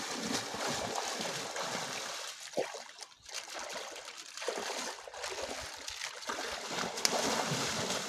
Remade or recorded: recorded